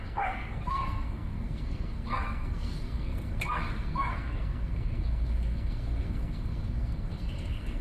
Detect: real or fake fake